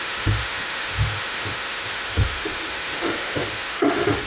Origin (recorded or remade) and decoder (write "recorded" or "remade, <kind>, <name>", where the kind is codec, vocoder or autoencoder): remade, autoencoder, DAC-VAE